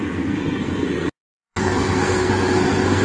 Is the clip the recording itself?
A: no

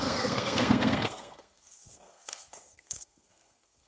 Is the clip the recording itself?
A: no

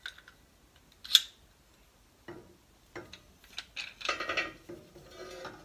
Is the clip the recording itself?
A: yes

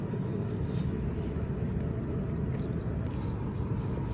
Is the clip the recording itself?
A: yes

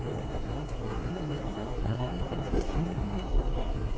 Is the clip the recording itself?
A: no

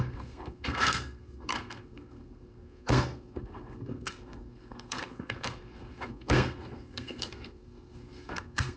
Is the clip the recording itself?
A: no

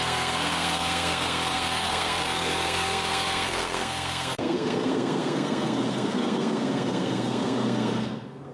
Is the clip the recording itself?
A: no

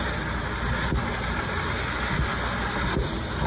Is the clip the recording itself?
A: yes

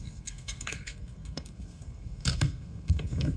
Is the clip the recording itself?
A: no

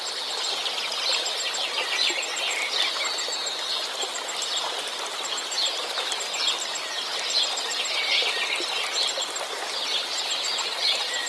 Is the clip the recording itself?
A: yes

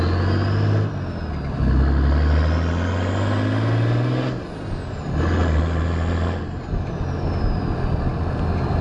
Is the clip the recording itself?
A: yes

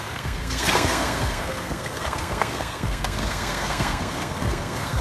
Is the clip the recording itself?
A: no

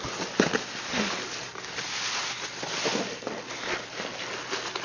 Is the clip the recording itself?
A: yes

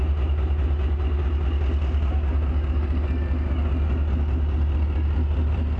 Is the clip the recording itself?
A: yes